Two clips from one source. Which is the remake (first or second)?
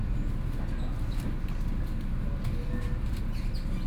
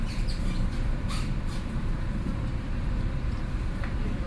second